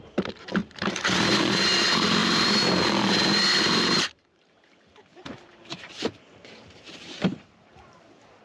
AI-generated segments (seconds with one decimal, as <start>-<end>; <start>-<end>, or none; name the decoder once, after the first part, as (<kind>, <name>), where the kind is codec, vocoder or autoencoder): 0.0-8.4 (vocoder, BigVGAN v2)